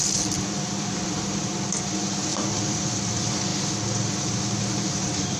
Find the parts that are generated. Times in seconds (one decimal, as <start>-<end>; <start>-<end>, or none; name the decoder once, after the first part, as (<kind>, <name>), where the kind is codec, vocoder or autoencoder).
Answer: 0.0-3.5 (vocoder, BigVGAN v2); 4.6-5.4